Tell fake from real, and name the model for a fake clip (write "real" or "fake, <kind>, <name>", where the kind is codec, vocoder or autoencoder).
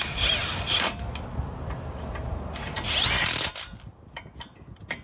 real